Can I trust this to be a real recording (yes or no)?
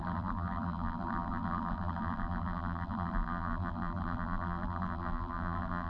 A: no